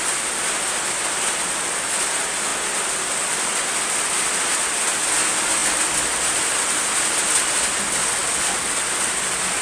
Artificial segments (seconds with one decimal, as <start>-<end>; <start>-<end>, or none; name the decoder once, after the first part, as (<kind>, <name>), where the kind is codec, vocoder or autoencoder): none